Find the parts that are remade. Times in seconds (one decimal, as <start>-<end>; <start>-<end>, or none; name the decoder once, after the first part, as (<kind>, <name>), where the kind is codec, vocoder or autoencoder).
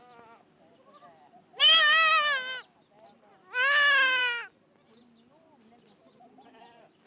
none